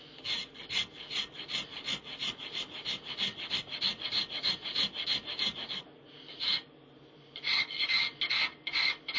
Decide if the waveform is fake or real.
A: real